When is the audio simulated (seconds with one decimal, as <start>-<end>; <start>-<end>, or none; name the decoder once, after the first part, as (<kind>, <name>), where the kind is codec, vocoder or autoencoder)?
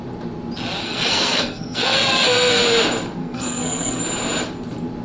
0.8-2.6 (codec, SNAC); 3.2-4.0